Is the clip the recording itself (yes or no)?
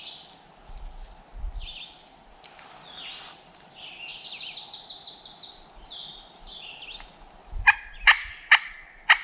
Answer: yes